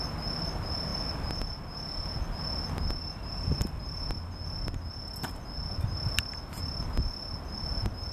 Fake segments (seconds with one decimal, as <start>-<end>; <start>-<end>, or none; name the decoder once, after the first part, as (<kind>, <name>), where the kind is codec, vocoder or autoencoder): none